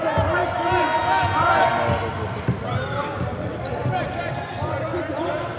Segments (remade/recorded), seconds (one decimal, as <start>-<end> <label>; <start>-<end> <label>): 0.0-5.6 recorded